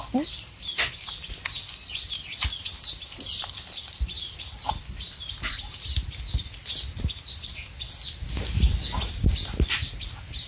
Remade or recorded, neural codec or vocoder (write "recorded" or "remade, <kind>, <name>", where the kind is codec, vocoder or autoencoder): recorded